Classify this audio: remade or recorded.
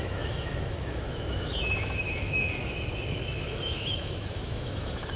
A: remade